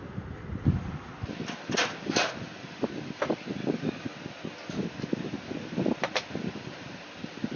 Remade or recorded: recorded